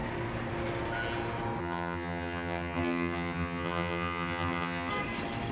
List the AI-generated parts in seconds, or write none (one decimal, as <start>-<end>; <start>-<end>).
1.6-4.9